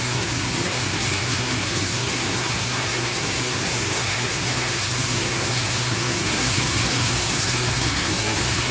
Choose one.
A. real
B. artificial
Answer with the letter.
B